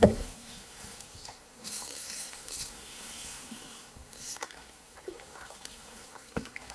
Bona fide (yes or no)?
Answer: no